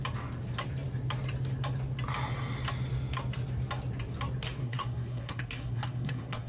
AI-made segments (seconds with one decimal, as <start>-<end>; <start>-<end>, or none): 4.6-6.5